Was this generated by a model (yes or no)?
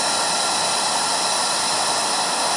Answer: no